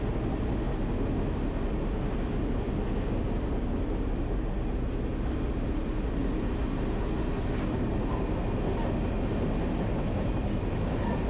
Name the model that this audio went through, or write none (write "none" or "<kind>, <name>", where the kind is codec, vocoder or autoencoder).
none